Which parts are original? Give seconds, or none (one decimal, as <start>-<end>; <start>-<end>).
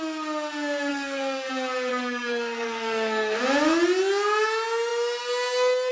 0.0-0.9; 1.5-1.9; 3.4-5.9